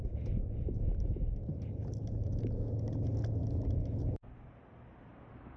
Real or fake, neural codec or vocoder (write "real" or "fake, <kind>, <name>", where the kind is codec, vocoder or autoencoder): real